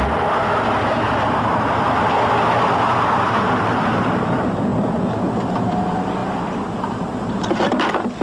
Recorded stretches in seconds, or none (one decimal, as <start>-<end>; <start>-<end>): 0.0-8.2